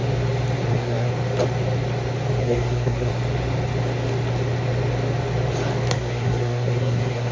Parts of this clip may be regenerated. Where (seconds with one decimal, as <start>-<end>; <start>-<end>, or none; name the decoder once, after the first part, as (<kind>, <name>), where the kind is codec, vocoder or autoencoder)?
0.7-1.1 (codec, SNAC); 2.4-3.1; 5.9-7.3